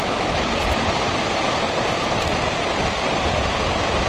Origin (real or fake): real